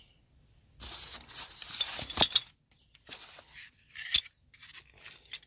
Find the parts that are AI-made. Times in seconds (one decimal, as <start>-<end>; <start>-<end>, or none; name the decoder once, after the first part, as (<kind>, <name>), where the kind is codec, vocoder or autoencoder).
none